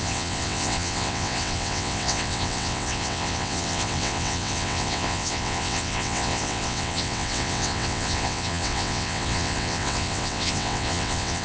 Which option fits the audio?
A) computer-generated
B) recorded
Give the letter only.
A